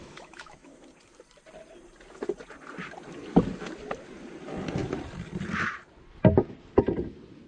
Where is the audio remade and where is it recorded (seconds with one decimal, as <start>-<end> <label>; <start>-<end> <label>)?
0.0-0.9 remade; 0.9-7.5 recorded